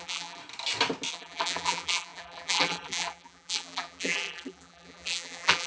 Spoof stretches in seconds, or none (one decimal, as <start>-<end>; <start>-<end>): 0.0-0.4; 1.1-5.7